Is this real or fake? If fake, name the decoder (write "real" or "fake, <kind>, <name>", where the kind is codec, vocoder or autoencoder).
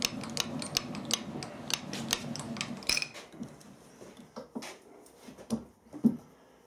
real